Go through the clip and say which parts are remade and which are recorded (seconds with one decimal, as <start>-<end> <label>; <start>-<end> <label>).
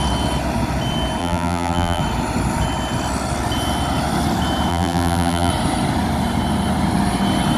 0.0-1.2 recorded; 1.2-2.0 remade; 2.0-4.7 recorded; 4.7-5.5 remade; 5.5-7.6 recorded